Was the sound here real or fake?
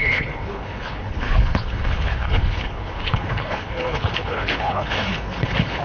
fake